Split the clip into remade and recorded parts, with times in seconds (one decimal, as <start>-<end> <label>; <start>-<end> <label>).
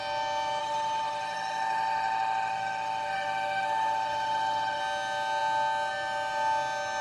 0.0-0.6 recorded; 0.6-4.8 remade; 4.8-7.0 recorded